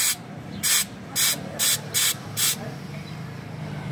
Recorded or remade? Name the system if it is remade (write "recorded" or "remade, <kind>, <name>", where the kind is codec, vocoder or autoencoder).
recorded